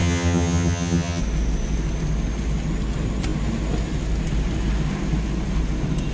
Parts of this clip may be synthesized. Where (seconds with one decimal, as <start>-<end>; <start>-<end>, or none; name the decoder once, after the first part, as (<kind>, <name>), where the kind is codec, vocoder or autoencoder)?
0.0-1.2 (vocoder, HiFi-GAN)

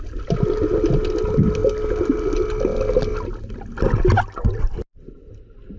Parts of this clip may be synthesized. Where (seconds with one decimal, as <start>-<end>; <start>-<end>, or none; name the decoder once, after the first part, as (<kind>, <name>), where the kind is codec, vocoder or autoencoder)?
none

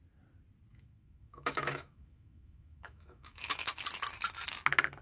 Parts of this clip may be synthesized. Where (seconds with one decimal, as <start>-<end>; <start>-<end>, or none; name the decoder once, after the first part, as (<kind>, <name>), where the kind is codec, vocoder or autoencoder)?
0.7-3.7 (autoencoder, DAC-VAE)

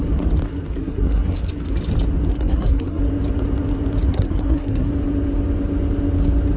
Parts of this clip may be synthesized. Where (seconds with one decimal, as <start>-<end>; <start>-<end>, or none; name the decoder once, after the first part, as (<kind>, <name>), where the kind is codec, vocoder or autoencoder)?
0.8-1.4 (codec, SNAC); 2.3-3.0; 4.1-4.9

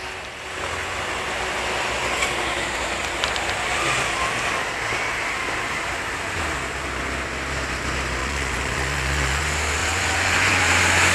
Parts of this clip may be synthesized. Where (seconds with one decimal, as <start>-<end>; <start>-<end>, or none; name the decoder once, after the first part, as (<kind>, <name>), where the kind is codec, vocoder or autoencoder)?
8.2-9.4 (vocoder, Vocos); 9.8-10.6